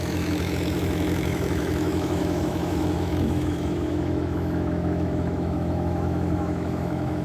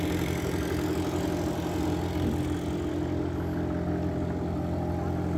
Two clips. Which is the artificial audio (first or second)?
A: first